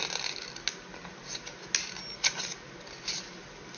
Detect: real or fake real